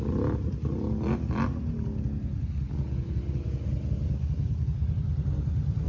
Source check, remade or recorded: recorded